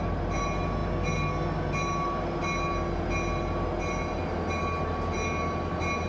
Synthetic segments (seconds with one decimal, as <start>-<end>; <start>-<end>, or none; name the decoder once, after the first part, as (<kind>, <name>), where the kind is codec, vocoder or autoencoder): none